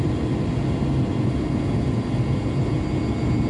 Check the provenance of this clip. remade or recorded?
recorded